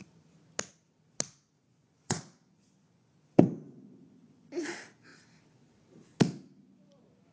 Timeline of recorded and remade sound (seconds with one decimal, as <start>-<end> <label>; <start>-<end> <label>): 0.0-1.7 recorded; 1.7-4.5 remade; 4.5-7.3 recorded